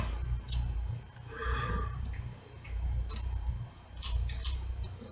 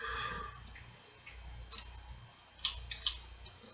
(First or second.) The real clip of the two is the second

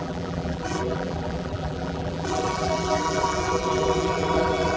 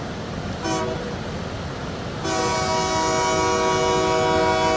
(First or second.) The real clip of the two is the second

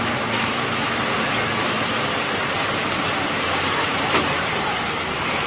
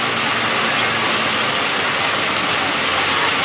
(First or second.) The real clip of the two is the second